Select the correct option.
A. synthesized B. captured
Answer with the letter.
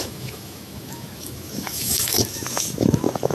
A